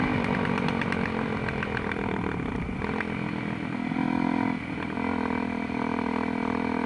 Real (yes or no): yes